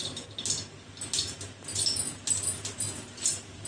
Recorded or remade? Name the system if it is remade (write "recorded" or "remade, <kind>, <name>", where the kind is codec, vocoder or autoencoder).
recorded